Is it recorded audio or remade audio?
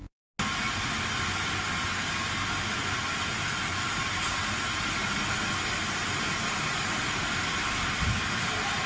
recorded